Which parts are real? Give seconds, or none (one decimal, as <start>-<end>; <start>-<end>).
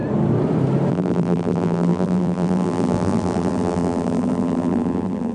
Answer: 0.0-0.9